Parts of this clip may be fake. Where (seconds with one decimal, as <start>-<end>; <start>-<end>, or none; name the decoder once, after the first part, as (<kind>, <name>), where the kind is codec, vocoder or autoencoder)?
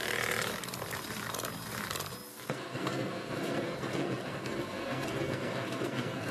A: 2.3-6.3 (codec, SNAC)